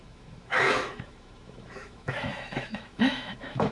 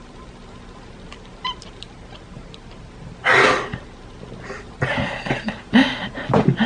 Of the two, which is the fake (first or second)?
first